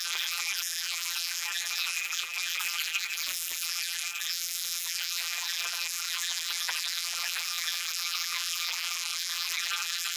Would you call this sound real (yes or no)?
no